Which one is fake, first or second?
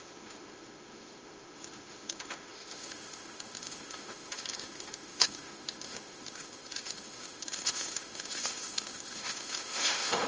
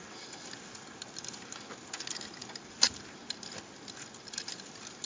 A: first